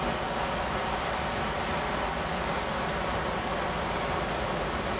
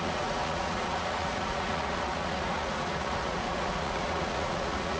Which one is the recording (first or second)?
first